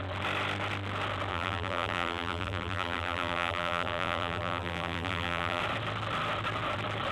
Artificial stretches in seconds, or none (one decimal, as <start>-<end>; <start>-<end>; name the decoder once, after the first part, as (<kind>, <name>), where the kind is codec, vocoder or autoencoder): 1.3-5.6 (vocoder, BigVGAN v2)